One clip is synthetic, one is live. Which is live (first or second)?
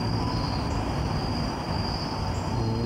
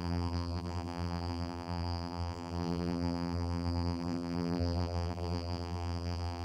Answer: first